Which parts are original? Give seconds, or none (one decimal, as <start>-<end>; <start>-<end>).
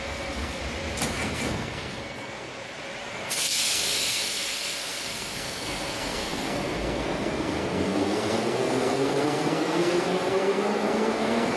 0.6-1.1; 2.5-3.0